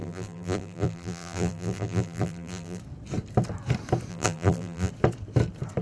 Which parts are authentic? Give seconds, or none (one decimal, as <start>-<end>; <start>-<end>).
2.8-4.1; 4.9-5.8